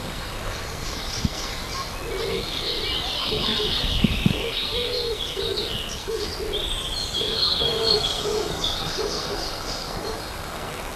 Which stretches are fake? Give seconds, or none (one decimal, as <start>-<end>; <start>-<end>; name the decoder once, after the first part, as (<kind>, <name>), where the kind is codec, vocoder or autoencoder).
0.0-1.6 (codec, SNAC); 2.3-2.7; 3.2-6.3; 7.2-11.0